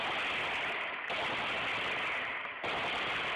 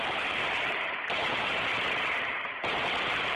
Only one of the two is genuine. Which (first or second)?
first